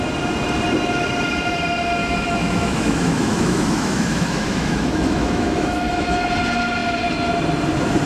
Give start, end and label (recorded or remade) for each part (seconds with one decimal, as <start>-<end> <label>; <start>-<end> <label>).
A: 0.0-2.0 recorded; 2.0-6.2 remade; 6.2-8.1 recorded